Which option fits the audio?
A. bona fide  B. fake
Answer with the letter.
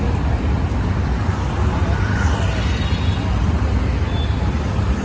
A